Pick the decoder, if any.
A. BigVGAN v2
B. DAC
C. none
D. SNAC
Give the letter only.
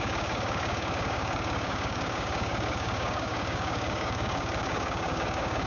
B